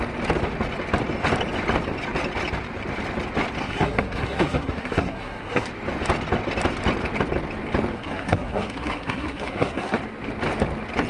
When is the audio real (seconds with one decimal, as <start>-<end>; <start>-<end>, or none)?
0.0-3.6; 5.7-7.9; 10.0-11.1